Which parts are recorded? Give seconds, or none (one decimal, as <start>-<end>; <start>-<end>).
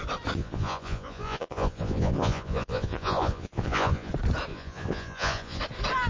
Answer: 0.0-0.4; 4.1-4.5; 5.6-6.1